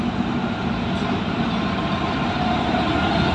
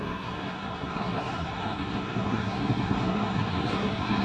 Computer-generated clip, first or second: second